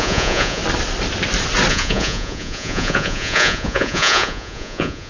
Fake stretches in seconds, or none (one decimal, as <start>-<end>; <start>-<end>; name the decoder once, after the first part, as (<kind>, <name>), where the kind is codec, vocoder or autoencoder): 0.0-0.6 (vocoder, Vocos); 1.7-5.1

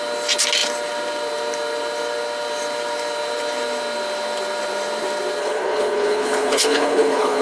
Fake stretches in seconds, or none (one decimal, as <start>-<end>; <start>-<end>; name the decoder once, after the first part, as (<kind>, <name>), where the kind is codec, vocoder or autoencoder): 5.4-7.4 (codec, HILCodec)

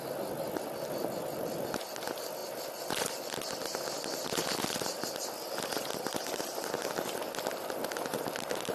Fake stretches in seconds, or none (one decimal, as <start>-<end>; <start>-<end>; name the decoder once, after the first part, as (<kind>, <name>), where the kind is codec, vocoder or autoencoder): none

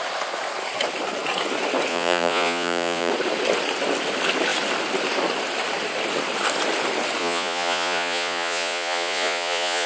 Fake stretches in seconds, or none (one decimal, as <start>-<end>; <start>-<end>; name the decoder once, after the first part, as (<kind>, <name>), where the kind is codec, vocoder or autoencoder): 1.9-3.1 (vocoder, Vocos); 7.2-9.9